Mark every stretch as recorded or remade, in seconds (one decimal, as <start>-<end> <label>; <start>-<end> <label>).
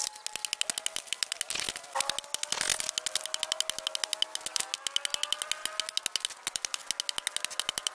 0.0-7.9 recorded